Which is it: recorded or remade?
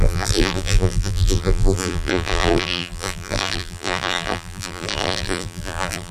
remade